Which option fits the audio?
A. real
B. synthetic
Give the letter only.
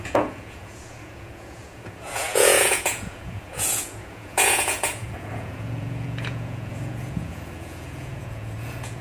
B